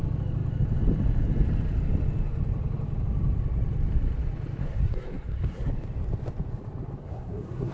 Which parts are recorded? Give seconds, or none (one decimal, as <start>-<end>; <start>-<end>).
0.0-4.6; 5.7-7.0